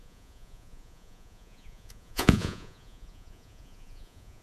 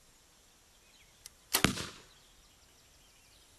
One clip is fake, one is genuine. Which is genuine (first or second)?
second